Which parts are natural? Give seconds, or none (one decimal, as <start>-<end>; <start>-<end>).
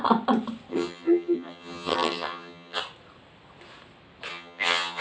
0.0-0.7; 2.8-4.3